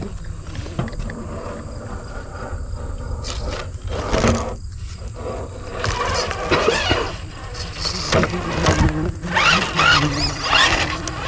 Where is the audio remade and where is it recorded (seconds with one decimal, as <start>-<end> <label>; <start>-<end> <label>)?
0.0-11.3 recorded